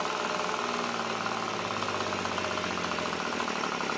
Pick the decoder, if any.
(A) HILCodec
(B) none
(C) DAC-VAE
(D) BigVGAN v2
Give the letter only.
B